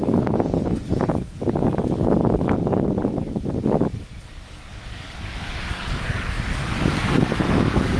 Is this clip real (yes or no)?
no